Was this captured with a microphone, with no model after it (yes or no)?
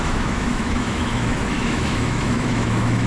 no